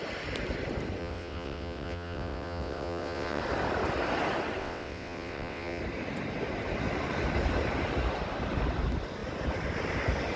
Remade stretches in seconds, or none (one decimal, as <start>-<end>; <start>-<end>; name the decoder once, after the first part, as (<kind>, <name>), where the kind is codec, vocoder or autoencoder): 1.0-3.4 (vocoder, WaveNeXt); 4.6-5.8